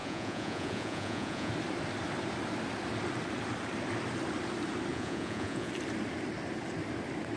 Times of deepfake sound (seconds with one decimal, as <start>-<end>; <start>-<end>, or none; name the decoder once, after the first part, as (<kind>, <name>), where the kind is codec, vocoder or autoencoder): 0.0-1.5 (vocoder, Vocos); 4.9-5.7